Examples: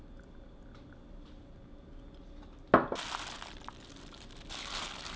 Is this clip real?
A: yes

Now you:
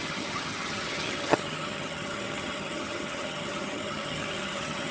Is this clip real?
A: no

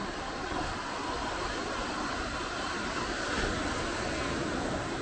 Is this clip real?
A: yes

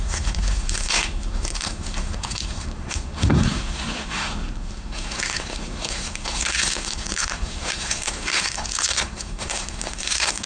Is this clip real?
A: no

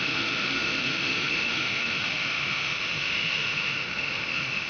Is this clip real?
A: no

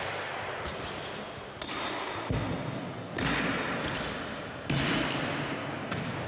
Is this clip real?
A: yes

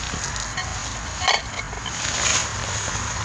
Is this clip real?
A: yes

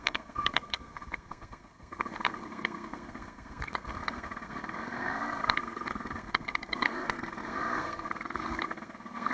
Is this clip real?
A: no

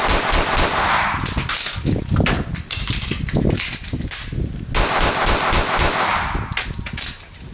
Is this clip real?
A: yes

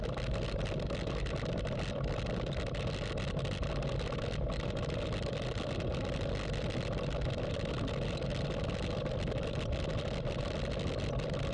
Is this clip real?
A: yes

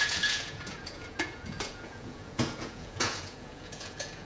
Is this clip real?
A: no